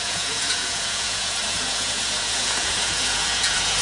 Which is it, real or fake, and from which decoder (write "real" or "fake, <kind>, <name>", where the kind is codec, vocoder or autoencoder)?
fake, vocoder, Vocos